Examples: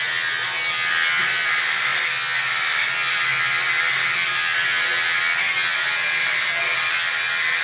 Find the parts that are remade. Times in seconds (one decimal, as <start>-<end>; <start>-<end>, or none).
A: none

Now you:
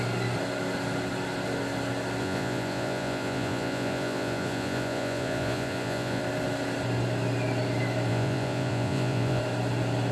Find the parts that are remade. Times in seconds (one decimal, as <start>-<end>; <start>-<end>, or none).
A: 2.2-6.2; 8.1-9.4

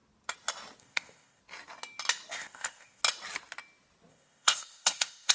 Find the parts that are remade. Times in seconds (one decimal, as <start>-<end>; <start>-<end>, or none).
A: 0.8-1.4; 2.3-3.0; 4.1-5.3

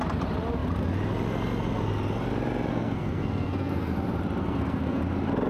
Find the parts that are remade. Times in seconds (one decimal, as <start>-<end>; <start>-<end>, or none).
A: 2.7-3.9; 4.4-5.0